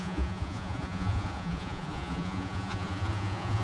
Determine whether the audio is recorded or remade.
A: remade